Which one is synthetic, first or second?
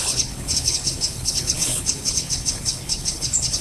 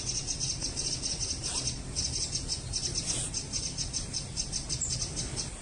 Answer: first